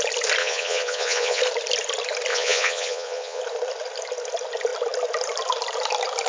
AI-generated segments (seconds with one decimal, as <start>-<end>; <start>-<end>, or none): 0.4-1.4; 2.3-3.4